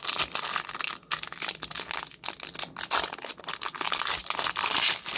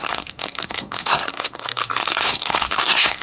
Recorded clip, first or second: first